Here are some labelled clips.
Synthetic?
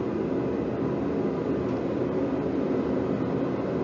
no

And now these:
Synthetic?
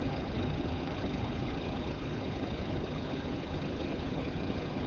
yes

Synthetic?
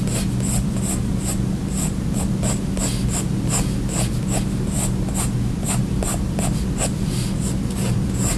no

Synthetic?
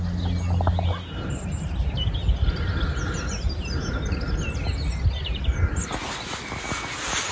no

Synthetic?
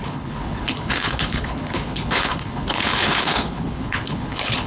yes